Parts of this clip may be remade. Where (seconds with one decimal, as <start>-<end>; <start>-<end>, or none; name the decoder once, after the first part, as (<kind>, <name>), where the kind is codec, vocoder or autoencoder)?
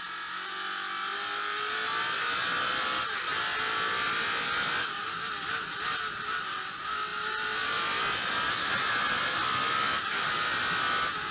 none